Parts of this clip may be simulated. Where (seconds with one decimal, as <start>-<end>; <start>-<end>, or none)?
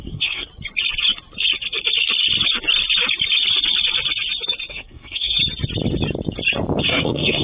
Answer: 0.0-0.5; 4.7-5.4; 6.8-7.4